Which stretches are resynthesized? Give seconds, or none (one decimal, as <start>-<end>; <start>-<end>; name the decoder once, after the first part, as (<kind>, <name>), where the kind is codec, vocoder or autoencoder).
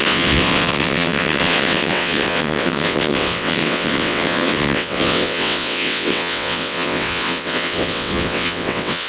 0.0-9.1 (vocoder, WaveNeXt)